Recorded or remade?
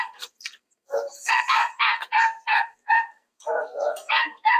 remade